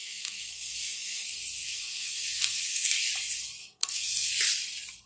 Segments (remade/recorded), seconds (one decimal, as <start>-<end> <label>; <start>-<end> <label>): 0.0-3.1 remade; 3.1-3.6 recorded; 3.6-4.3 remade; 4.3-5.1 recorded